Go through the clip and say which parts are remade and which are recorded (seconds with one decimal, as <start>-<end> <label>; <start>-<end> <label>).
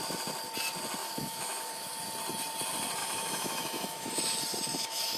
0.0-1.0 recorded; 1.0-2.0 remade; 2.0-3.0 recorded; 3.0-4.2 remade; 4.2-4.7 recorded; 4.7-5.2 remade